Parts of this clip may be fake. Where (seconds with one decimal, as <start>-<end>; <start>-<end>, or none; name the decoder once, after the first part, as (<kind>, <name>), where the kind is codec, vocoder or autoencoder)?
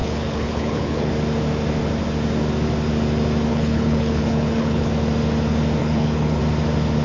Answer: 0.0-1.1 (codec, HILCodec); 3.5-4.9; 5.8-6.4